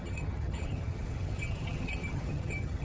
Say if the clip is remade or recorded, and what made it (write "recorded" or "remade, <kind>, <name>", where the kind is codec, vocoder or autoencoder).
remade, vocoder, HiFi-GAN